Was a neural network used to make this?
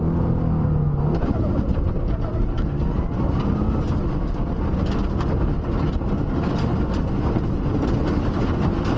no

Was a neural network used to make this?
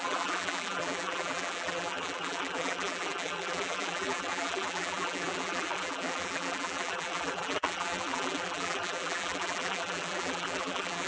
yes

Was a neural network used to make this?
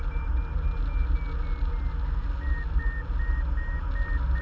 no